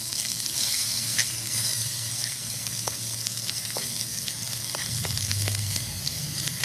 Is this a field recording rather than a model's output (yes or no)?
no